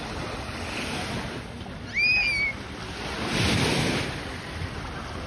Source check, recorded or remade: recorded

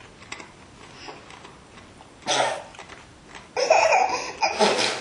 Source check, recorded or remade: recorded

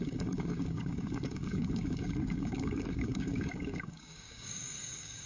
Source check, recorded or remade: remade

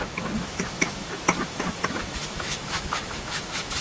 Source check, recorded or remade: remade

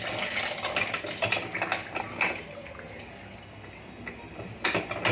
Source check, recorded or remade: recorded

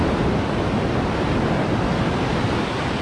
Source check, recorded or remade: recorded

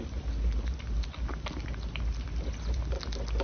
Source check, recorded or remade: recorded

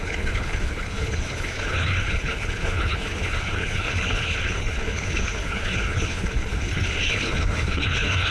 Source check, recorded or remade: remade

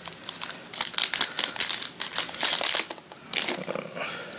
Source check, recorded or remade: recorded